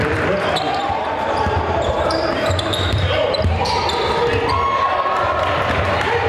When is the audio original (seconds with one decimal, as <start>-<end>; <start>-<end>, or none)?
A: 3.8-6.3

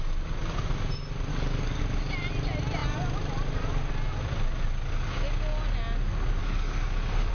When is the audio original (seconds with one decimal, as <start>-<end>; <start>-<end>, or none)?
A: 0.0-1.3; 1.8-6.4

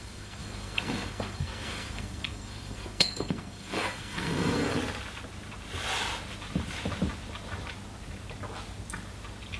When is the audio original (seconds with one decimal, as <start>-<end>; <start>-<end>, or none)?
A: 4.8-9.6

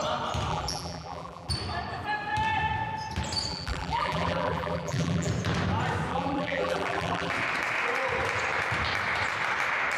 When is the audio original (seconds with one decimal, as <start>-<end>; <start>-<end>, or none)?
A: 0.0-0.5; 1.5-3.5; 5.3-6.1; 7.3-10.0

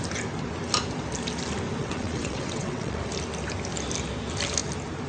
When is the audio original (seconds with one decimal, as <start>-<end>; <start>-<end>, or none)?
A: 0.0-1.8; 3.0-5.1

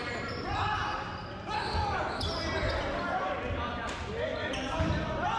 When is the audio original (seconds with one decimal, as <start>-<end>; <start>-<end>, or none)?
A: 0.0-0.8; 2.0-5.4